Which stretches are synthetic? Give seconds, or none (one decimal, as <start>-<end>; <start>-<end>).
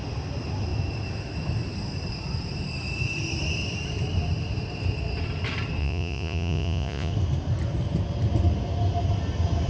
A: 5.8-7.1